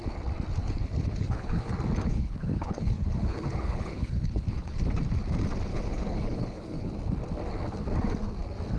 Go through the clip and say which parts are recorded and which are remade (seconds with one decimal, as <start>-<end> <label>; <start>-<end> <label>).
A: 0.0-0.6 recorded; 0.6-1.7 remade; 1.7-2.1 recorded; 2.1-4.8 remade; 4.8-5.7 recorded; 5.7-6.9 remade; 6.9-8.8 recorded